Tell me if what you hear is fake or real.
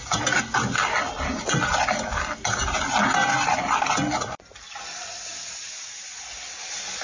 real